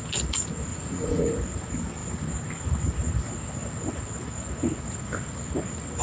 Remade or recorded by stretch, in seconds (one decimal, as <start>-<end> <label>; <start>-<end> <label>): 0.0-0.7 recorded; 0.7-1.3 remade; 1.3-6.0 recorded